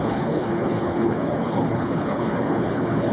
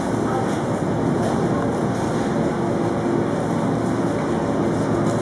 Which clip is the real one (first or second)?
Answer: second